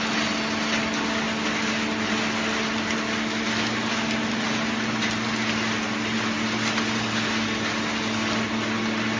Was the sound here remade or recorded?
recorded